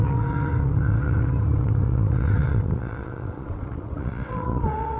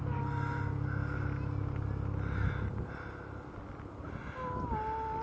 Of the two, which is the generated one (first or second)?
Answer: first